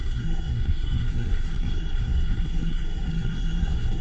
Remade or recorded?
remade